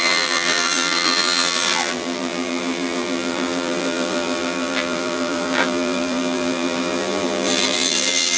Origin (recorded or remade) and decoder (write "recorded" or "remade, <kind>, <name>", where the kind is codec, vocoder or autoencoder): remade, vocoder, BigVGAN v2